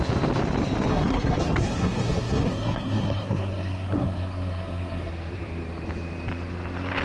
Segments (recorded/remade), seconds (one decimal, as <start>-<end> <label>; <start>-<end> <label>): 0.0-0.9 recorded; 0.9-5.1 remade; 5.1-7.0 recorded